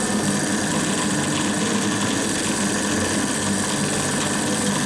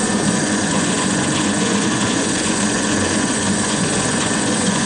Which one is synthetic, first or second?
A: second